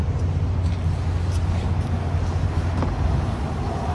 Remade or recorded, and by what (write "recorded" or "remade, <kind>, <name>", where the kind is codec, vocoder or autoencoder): recorded